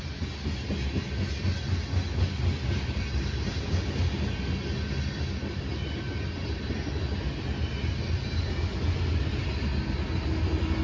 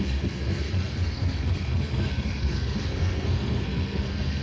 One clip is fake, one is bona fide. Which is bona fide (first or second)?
first